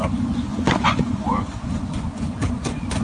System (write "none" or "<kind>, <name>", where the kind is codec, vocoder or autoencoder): vocoder, Vocos